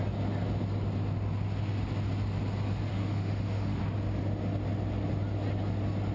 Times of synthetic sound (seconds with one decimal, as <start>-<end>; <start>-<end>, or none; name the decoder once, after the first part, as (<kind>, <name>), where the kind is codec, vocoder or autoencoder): 2.9-3.8 (autoencoder, DAC-VAE)